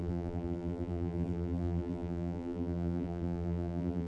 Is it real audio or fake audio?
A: fake